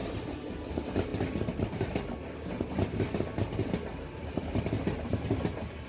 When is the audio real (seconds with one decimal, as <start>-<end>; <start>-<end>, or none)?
0.0-5.9